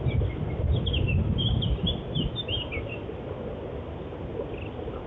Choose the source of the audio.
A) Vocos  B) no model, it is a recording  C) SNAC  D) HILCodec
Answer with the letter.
B